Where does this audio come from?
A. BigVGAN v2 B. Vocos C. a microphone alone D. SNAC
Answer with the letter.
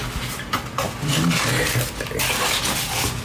C